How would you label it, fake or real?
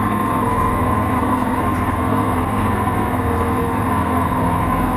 fake